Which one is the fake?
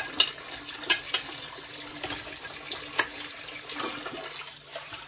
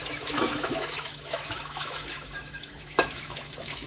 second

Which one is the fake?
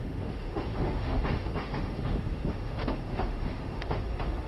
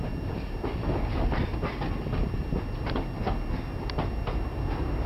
first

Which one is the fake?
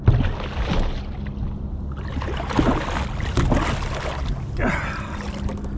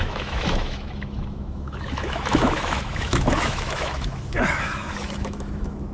second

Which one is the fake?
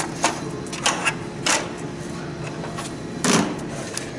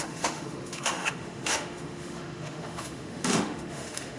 second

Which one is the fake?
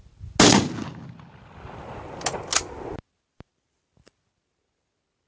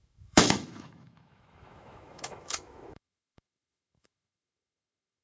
second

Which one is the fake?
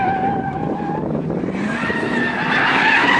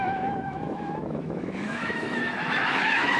second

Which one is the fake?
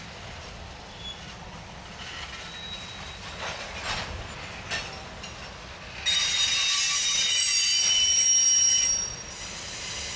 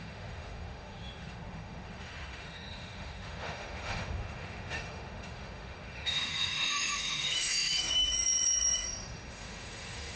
second